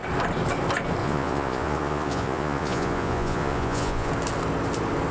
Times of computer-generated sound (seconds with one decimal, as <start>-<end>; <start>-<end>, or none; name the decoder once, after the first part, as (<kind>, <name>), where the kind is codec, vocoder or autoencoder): 1.0-4.1 (vocoder, Vocos)